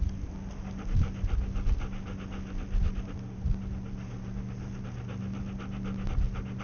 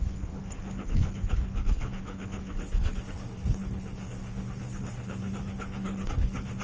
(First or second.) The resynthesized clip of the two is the second